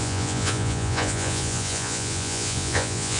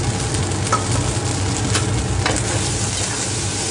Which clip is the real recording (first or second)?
second